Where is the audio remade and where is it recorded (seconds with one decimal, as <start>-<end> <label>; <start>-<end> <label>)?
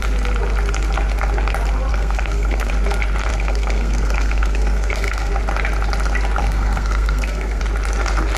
0.0-1.9 recorded; 1.9-2.7 remade; 2.7-3.3 recorded; 3.3-5.3 remade; 5.3-6.4 recorded; 6.4-7.6 remade; 7.6-8.4 recorded